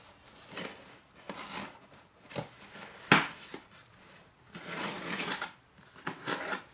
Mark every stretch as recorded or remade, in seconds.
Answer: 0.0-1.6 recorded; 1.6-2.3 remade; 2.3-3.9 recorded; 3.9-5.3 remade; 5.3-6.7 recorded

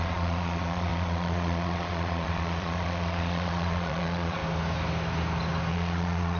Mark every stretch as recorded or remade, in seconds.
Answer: 0.0-4.4 remade; 4.4-5.7 recorded; 5.7-6.4 remade

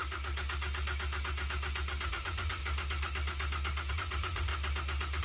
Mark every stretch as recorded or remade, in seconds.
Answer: 0.0-2.1 recorded; 2.1-2.6 remade; 2.6-3.9 recorded; 3.9-4.5 remade; 4.5-5.2 recorded

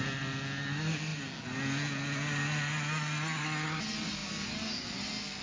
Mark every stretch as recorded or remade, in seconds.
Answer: 0.0-5.4 recorded

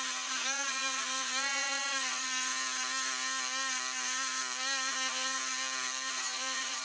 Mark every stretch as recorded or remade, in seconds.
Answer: 0.0-2.5 remade; 2.5-4.9 recorded; 4.9-5.4 remade; 5.4-6.1 recorded; 6.1-6.8 remade

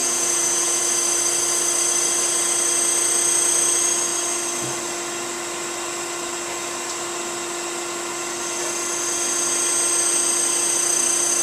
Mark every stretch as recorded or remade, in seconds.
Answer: 0.0-0.8 remade; 0.8-11.4 recorded

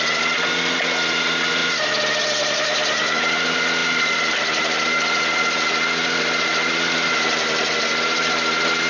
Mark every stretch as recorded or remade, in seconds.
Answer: 0.0-8.9 recorded